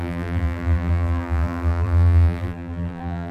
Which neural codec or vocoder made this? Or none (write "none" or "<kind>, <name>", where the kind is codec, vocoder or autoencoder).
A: vocoder, BigVGAN v2